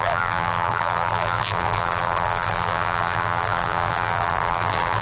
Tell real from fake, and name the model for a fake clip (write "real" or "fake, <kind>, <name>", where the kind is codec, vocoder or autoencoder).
fake, vocoder, BigVGAN v2